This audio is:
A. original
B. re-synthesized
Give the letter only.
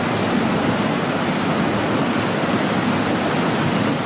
A